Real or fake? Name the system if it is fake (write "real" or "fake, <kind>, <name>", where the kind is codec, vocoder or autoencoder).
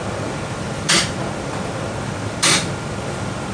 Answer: fake, vocoder, BigVGAN v2